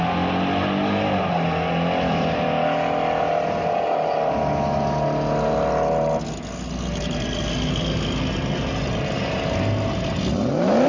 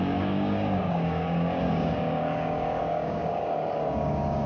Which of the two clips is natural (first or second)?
first